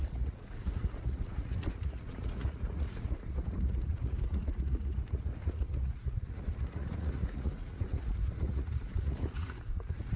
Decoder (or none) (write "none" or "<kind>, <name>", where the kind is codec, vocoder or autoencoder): vocoder, Vocos